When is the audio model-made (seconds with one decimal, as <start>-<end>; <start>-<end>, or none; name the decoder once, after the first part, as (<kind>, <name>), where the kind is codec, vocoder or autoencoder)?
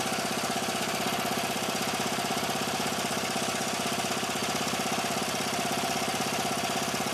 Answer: none